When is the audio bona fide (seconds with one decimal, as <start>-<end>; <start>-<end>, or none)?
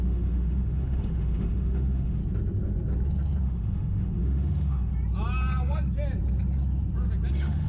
2.2-3.4; 4.9-7.3